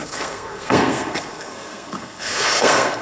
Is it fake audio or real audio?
fake